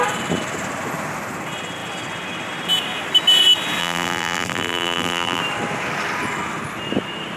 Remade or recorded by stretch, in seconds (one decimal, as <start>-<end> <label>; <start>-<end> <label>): 0.0-3.8 recorded; 3.8-5.4 remade; 5.4-7.4 recorded